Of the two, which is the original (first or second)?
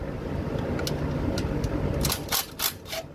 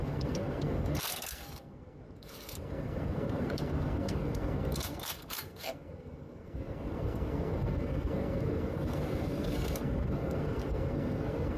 first